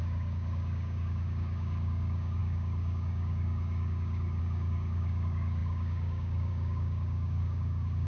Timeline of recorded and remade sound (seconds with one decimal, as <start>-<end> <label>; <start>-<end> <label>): 0.0-8.1 remade